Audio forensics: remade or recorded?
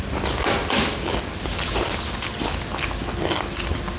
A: recorded